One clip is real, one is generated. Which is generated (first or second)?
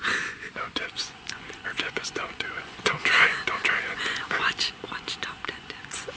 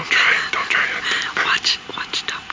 first